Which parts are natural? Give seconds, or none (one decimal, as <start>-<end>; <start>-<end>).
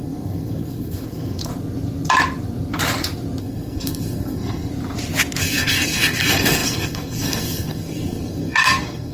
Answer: 1.5-3.4; 4.7-5.4